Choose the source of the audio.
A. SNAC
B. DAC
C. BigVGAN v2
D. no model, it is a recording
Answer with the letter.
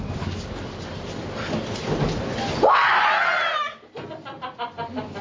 D